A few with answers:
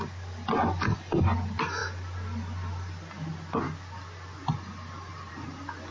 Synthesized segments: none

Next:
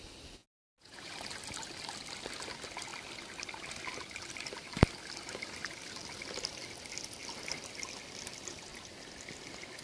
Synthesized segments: 0.4-1.1 (vocoder, Vocos)

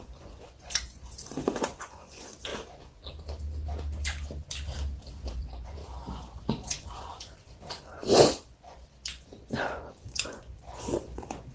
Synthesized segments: 0.0-2.5 (vocoder, Vocos); 5.1-11.5

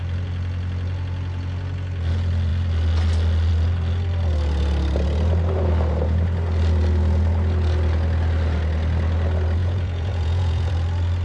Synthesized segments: 9.6-10.7 (vocoder, Vocos)